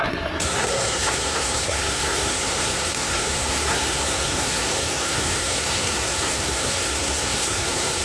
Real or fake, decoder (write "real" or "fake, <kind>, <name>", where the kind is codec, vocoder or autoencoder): fake, codec, SNAC